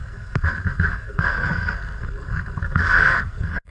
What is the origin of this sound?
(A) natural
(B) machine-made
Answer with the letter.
B